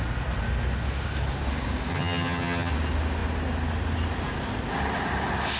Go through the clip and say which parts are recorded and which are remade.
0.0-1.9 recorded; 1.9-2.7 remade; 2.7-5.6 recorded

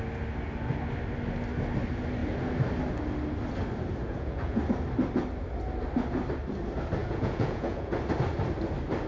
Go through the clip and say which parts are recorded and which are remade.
0.0-4.0 recorded; 4.0-4.6 remade; 4.6-7.0 recorded; 7.0-7.9 remade; 7.9-9.1 recorded

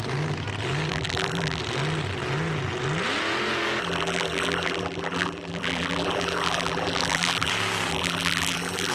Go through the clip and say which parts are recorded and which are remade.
0.0-0.9 recorded; 0.9-1.6 remade; 1.6-3.8 recorded; 3.8-7.5 remade; 7.5-7.9 recorded; 7.9-8.9 remade

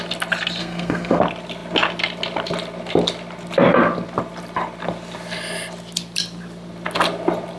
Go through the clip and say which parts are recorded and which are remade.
0.0-0.6 recorded; 0.6-1.2 remade; 1.2-7.6 recorded